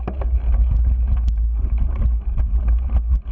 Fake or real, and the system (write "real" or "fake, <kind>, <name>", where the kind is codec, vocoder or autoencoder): real